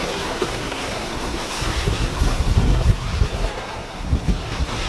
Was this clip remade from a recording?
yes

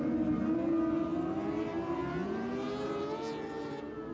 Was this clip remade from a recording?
no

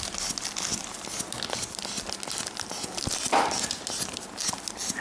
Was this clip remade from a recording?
no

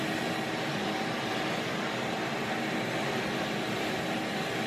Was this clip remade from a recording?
no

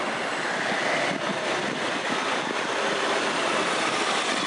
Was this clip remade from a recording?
no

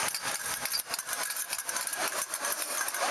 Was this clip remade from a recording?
no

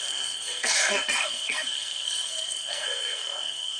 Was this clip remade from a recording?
yes